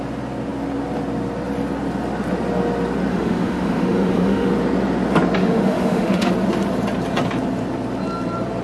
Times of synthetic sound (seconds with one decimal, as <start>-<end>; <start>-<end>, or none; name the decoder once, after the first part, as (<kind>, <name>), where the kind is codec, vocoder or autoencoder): 3.1-4.5 (autoencoder, DAC-VAE); 5.4-6.3